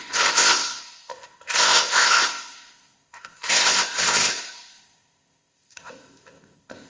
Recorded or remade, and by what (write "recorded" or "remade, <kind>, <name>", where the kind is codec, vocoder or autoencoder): remade, codec, ZipCodec